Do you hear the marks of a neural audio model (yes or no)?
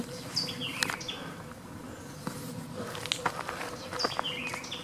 no